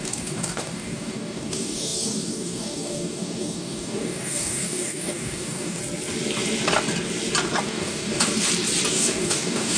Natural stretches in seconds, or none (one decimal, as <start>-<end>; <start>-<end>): 5.8-7.6; 8.3-8.9